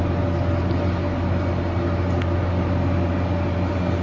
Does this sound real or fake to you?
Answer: real